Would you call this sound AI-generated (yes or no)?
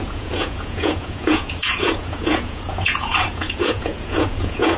yes